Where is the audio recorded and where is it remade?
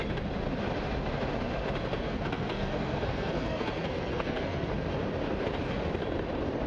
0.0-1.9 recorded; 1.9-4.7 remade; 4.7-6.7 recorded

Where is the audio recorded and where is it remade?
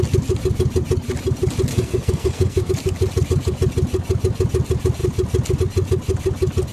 0.0-1.7 recorded; 1.7-2.7 remade; 2.7-6.7 recorded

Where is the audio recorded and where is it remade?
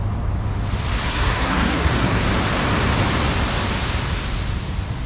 0.0-1.1 recorded; 1.1-2.2 remade; 2.2-5.1 recorded